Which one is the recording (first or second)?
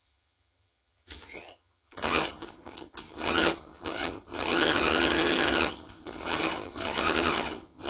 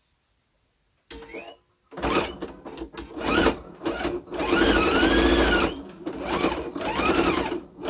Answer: second